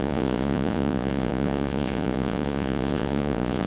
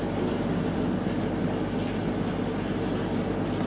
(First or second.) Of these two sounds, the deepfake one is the first